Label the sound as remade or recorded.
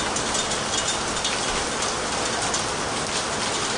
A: recorded